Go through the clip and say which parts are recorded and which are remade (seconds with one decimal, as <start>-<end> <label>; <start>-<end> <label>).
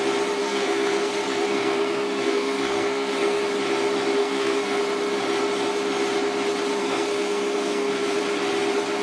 0.0-0.4 recorded; 0.4-3.4 remade; 3.4-4.2 recorded; 4.2-4.8 remade; 4.8-6.8 recorded; 6.8-8.2 remade; 8.2-9.0 recorded